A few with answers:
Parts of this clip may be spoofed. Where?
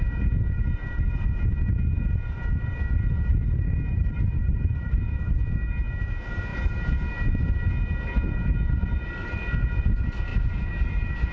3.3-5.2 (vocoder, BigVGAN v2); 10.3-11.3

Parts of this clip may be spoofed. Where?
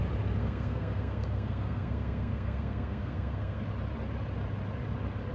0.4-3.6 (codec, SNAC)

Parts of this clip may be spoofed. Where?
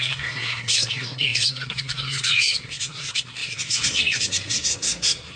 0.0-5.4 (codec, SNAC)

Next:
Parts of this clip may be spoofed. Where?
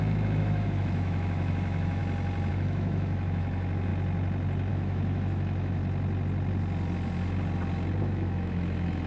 0.0-2.0 (autoencoder, DAC-VAE); 2.5-3.9; 4.7-5.8; 8.0-9.1